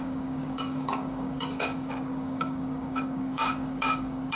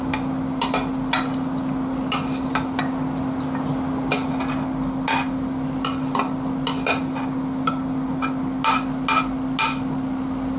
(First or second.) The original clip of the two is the second